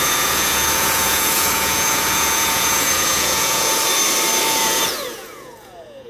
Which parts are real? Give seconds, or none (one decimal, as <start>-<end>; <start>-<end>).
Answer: 3.8-4.4